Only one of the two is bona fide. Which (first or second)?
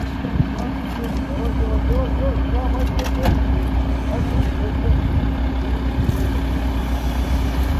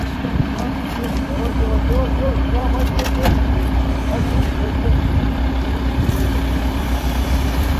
first